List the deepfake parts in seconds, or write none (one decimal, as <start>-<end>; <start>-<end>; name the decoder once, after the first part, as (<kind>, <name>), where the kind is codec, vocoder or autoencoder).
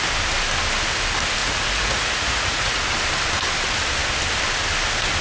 1.4-2.8 (vocoder, Vocos)